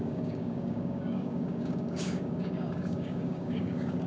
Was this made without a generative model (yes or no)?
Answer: no